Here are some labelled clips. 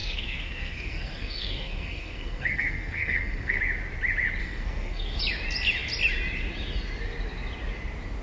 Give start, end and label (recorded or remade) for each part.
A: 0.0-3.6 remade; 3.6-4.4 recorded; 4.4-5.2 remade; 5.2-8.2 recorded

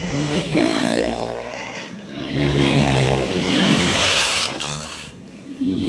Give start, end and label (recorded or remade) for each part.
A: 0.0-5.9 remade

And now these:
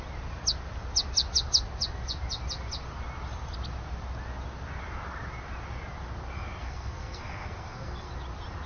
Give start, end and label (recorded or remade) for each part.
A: 0.0-6.6 recorded; 6.6-8.1 remade; 8.1-8.7 recorded

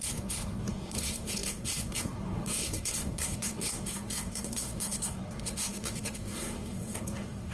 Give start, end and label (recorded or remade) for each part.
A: 0.0-7.5 remade

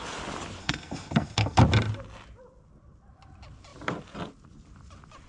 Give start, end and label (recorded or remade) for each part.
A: 0.0-0.6 recorded; 0.6-1.6 remade; 1.6-5.3 recorded

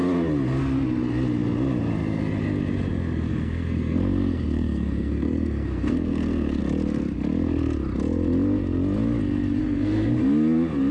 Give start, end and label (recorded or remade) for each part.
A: 0.0-3.3 recorded; 3.3-6.6 remade; 6.6-9.6 recorded; 9.6-10.2 remade; 10.2-10.9 recorded

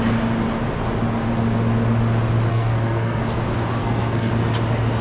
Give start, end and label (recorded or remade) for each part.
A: 0.0-2.5 recorded; 2.5-3.2 remade; 3.2-3.8 recorded; 3.8-4.3 remade; 4.3-5.0 recorded

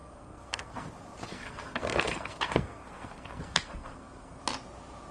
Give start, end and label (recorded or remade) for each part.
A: 0.0-0.9 remade; 0.9-1.3 recorded; 1.3-4.4 remade; 4.4-5.1 recorded